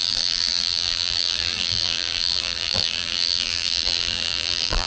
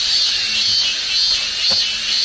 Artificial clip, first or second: first